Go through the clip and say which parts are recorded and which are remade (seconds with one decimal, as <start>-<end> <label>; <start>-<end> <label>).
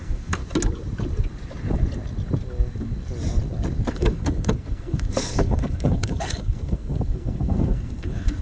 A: 0.0-0.4 remade; 0.4-3.9 recorded; 3.9-8.4 remade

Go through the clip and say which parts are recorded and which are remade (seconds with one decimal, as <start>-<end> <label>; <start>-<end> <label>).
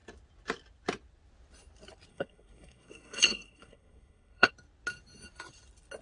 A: 0.0-2.1 recorded; 2.1-4.5 remade; 4.5-6.0 recorded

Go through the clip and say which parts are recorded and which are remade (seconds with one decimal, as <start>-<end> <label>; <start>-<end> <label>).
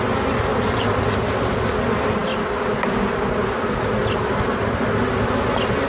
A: 0.0-5.9 recorded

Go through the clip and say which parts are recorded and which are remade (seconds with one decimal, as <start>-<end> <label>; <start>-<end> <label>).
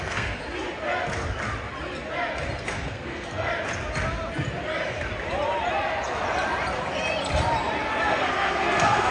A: 0.0-0.4 remade; 0.4-2.6 recorded; 2.6-3.5 remade; 3.5-8.0 recorded; 8.0-9.1 remade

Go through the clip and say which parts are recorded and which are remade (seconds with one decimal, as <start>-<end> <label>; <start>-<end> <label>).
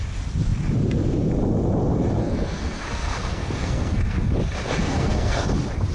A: 0.0-2.2 recorded; 2.2-4.3 remade; 4.3-4.8 recorded; 4.8-5.5 remade; 5.5-5.9 recorded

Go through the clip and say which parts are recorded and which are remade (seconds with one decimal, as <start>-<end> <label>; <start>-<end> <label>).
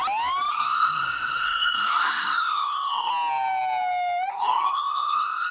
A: 0.0-0.5 recorded; 0.5-3.1 remade; 3.1-4.3 recorded; 4.3-5.5 remade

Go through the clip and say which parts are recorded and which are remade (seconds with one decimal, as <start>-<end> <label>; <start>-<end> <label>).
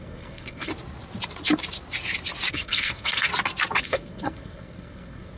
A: 0.0-0.7 remade; 0.7-2.5 recorded; 2.5-3.3 remade; 3.3-3.8 recorded; 3.8-5.4 remade